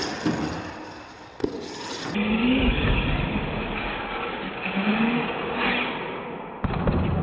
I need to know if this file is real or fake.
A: real